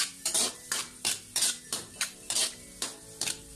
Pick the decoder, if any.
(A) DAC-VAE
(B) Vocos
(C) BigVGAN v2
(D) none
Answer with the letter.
C